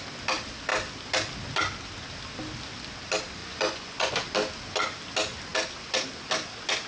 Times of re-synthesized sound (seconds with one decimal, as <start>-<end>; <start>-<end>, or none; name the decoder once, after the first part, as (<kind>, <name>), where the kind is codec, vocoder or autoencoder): 3.4-4.1 (vocoder, Vocos)